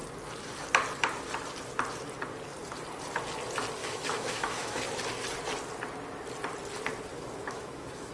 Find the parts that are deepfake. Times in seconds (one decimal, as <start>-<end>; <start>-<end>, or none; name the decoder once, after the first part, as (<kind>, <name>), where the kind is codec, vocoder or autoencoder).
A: 3.8-4.8 (autoencoder, DAC-VAE); 7.1-8.1